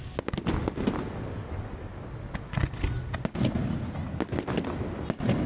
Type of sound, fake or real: real